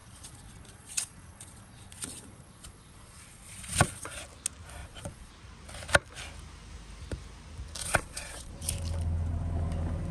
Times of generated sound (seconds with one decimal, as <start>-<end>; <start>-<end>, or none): 0.0-4.2; 4.8-5.3; 7.8-8.5